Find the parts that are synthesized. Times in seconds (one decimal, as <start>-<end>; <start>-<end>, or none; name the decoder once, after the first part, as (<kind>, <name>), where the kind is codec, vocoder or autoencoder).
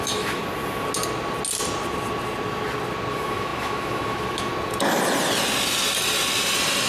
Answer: 0.0-0.4 (autoencoder, DAC-VAE); 3.1-4.5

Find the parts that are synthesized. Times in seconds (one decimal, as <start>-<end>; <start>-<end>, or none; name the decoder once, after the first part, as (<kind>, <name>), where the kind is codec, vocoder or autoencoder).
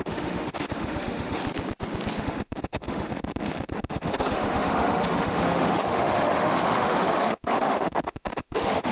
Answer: 0.0-1.4 (autoencoder, DAC-VAE); 2.2-8.9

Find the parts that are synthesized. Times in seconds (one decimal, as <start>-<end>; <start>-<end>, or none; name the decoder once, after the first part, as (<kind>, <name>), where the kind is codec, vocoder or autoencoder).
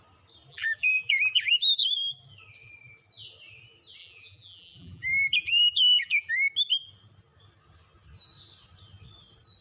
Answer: 0.5-1.8 (vocoder, BigVGAN v2); 4.0-6.3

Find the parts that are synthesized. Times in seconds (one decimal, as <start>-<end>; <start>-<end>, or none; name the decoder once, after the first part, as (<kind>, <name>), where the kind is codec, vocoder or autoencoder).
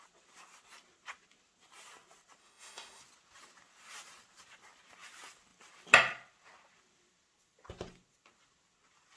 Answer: 2.4-3.0 (autoencoder, DAC-VAE)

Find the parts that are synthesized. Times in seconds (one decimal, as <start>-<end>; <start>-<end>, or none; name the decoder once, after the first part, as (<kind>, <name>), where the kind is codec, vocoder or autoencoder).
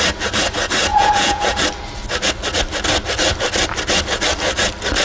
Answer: 0.9-1.6 (vocoder, Vocos)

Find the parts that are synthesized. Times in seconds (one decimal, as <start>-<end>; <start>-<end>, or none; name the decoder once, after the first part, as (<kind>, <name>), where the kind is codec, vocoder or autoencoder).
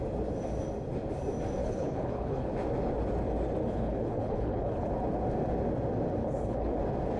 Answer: 1.6-2.5 (codec, HILCodec); 3.6-4.9; 6.2-6.8